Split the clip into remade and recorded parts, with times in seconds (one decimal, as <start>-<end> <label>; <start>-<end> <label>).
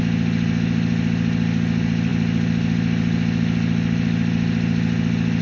0.0-5.4 recorded